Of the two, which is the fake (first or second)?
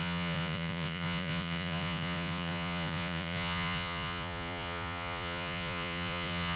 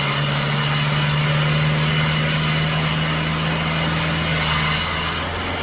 first